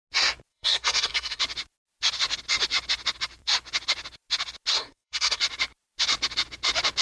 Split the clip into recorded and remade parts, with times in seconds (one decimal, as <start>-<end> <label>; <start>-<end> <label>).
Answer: 0.0-0.5 recorded; 0.5-1.4 remade; 1.4-4.7 recorded; 4.7-5.4 remade; 5.4-7.0 recorded